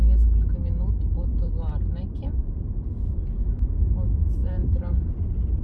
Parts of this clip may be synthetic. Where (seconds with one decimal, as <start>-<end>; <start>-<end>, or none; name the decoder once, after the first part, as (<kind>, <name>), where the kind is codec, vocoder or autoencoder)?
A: 0.5-3.9 (vocoder, BigVGAN v2); 4.4-5.1